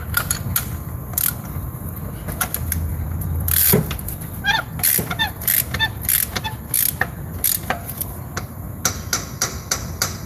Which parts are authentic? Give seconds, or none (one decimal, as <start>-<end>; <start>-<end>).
0.0-2.9; 4.0-10.3